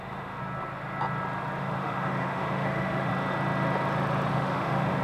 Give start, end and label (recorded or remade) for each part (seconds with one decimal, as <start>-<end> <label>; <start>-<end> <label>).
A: 0.0-0.4 remade; 0.4-1.6 recorded; 1.6-3.1 remade; 3.1-4.3 recorded; 4.3-5.0 remade